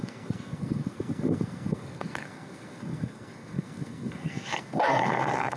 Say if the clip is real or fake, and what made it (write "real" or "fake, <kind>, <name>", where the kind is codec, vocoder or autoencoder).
fake, codec, SNAC